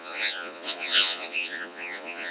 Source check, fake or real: fake